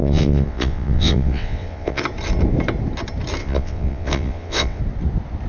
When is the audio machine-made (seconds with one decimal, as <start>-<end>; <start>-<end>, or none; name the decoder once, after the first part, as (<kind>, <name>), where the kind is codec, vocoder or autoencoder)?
0.0-2.0 (vocoder, WaveNeXt); 3.4-4.8